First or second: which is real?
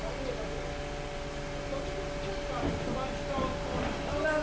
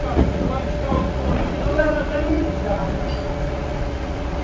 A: first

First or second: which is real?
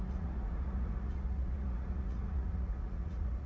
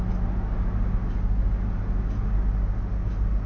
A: second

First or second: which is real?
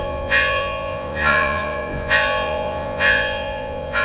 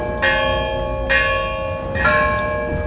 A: second